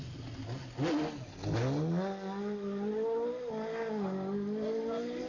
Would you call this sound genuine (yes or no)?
yes